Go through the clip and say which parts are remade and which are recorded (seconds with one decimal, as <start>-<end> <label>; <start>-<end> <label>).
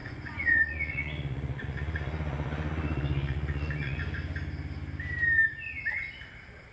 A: 0.0-4.0 remade; 4.0-6.7 recorded